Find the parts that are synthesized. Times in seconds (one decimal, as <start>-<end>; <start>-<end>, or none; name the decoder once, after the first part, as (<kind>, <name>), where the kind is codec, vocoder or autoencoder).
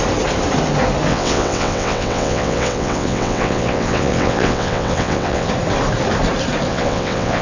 1.1-5.5 (vocoder, WaveNeXt); 6.7-7.4